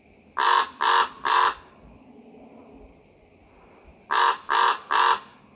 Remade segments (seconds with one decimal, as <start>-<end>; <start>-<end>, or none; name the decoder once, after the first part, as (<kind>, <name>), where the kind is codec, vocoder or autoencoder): none